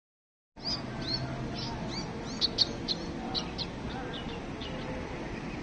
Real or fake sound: real